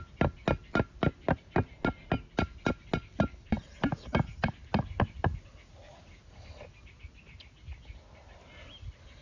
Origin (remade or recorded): recorded